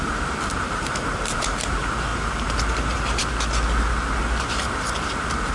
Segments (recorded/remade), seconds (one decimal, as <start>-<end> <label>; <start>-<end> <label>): 0.0-3.2 remade; 3.2-4.4 recorded; 4.4-5.5 remade